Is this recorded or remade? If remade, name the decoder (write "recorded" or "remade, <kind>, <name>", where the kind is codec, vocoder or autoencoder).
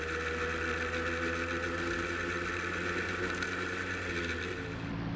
recorded